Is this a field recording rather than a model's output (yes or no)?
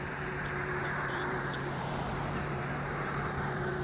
no